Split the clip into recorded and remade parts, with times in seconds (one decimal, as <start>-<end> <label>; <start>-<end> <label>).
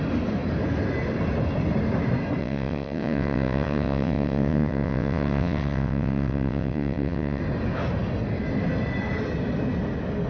0.0-2.4 recorded; 2.4-7.4 remade; 7.4-10.3 recorded